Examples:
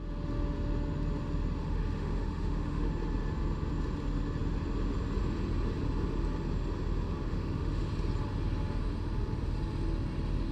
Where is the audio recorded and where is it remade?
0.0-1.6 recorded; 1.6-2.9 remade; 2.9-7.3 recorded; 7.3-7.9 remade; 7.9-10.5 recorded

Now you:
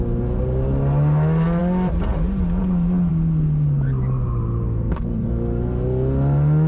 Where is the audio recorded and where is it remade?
0.0-6.7 recorded

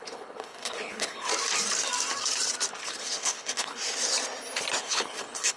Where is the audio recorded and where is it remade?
0.0-1.3 remade; 1.3-2.7 recorded; 2.7-3.8 remade; 3.8-4.8 recorded; 4.8-5.6 remade

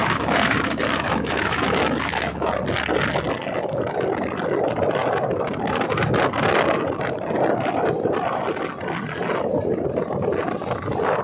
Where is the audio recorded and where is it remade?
0.0-2.5 remade; 2.5-11.2 recorded

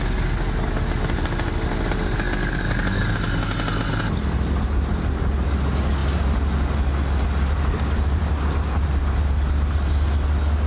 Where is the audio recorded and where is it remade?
0.0-10.7 recorded

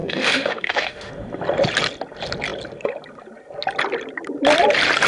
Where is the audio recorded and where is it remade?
0.0-1.1 remade; 1.1-5.1 recorded

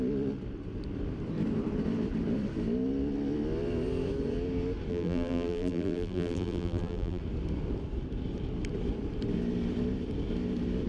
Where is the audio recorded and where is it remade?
0.0-4.9 recorded; 4.9-7.2 remade; 7.2-10.9 recorded

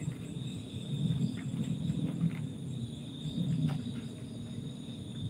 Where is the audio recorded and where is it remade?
0.0-5.3 recorded